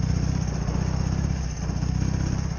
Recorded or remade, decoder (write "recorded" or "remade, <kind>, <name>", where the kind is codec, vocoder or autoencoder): recorded